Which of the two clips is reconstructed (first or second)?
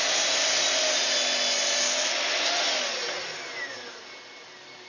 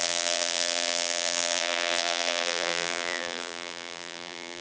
second